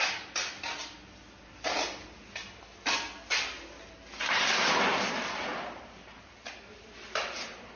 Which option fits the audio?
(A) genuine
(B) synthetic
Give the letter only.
A